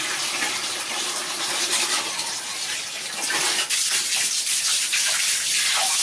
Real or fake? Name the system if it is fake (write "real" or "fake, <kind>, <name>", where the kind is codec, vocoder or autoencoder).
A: real